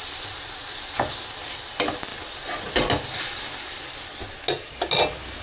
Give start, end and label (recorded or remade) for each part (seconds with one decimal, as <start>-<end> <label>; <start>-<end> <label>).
0.0-5.4 recorded

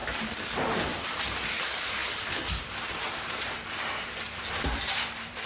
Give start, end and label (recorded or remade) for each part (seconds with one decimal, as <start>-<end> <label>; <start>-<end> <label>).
0.0-0.5 recorded; 0.5-2.0 remade; 2.0-2.9 recorded; 2.9-5.5 remade

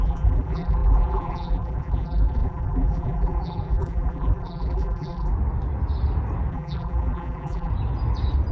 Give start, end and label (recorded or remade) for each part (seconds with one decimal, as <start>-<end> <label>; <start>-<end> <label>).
0.0-5.3 remade; 5.3-6.5 recorded; 6.5-7.7 remade; 7.7-8.5 recorded